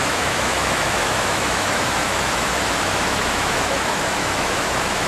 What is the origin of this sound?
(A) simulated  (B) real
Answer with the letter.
A